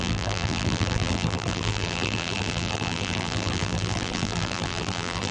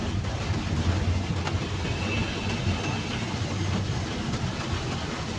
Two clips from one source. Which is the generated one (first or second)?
first